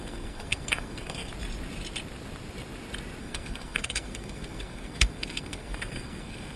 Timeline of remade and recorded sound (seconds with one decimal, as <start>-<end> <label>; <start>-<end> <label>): 0.0-1.3 remade; 1.3-3.2 recorded; 3.2-6.6 remade